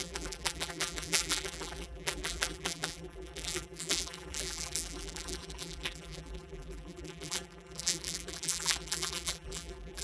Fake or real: fake